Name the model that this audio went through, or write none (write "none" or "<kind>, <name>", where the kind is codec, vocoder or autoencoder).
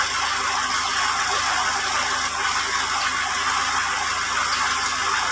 none